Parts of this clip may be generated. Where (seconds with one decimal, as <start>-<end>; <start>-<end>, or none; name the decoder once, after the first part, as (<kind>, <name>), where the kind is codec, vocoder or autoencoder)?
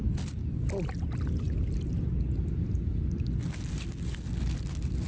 none